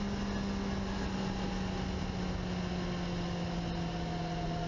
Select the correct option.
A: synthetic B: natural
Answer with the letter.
B